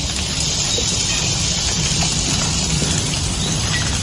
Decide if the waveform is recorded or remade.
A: recorded